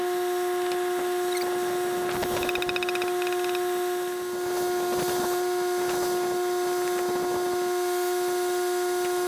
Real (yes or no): yes